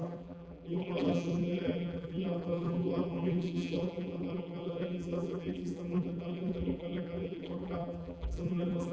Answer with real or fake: fake